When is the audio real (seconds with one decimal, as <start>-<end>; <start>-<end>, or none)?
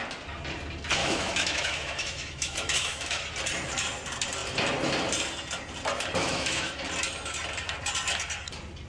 0.0-1.0; 3.2-6.2; 6.8-8.9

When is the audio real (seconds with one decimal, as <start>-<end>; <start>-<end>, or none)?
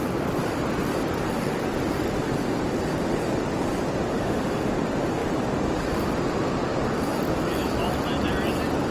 0.0-4.1; 4.7-8.9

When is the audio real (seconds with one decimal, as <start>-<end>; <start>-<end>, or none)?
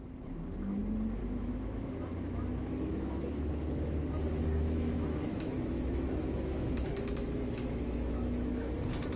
0.0-1.2; 4.1-4.6; 8.7-9.2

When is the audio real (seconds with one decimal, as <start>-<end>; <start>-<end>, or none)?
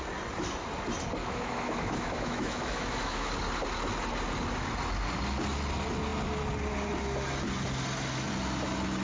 0.0-1.2; 3.3-9.0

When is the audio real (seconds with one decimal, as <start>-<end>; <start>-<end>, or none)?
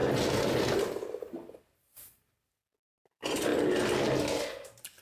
0.0-5.0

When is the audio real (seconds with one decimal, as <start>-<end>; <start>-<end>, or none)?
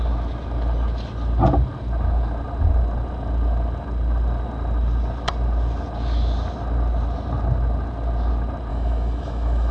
0.0-8.7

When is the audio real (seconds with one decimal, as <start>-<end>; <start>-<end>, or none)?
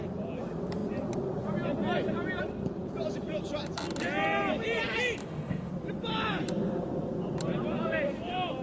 0.0-5.2; 5.7-8.6